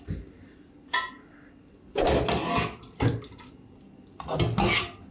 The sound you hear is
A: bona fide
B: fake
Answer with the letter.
A